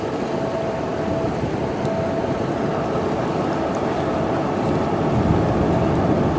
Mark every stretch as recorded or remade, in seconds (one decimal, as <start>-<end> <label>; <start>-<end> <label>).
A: 0.0-6.4 recorded